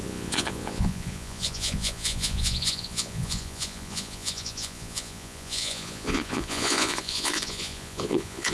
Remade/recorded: remade